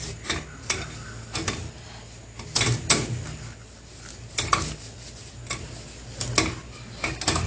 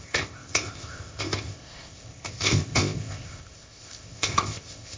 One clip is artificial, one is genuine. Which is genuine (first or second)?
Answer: first